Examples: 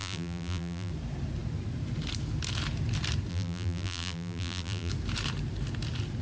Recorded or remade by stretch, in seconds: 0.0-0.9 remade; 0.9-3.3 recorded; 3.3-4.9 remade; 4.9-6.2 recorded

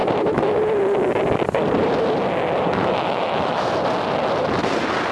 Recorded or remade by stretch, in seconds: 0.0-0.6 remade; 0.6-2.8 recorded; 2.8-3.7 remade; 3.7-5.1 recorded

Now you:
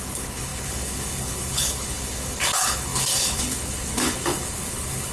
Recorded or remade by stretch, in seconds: 0.0-5.1 remade

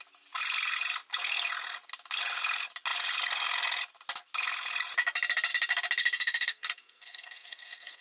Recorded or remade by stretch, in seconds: 0.0-6.0 recorded; 6.0-8.0 remade

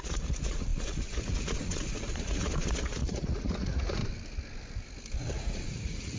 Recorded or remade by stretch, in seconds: 0.0-4.0 remade; 4.0-5.2 recorded; 5.2-6.2 remade

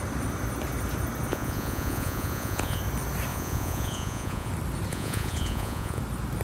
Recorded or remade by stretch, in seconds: 0.0-1.3 recorded; 1.3-2.8 remade; 2.8-3.3 recorded; 3.3-4.5 remade; 4.5-4.9 recorded; 4.9-6.0 remade; 6.0-6.4 recorded

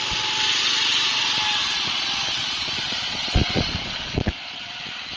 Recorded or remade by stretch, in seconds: 0.0-1.6 recorded; 1.6-4.7 remade; 4.7-5.2 recorded

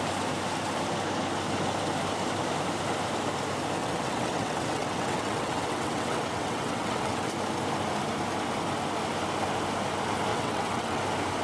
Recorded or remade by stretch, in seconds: 0.0-3.8 recorded; 3.8-7.3 remade; 7.3-10.3 recorded; 10.3-11.0 remade; 11.0-11.4 recorded